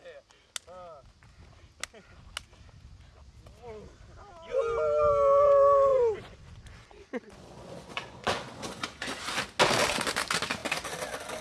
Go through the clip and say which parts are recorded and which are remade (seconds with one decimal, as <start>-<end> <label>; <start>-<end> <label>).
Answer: 0.0-5.9 recorded; 5.9-9.2 remade; 9.2-11.4 recorded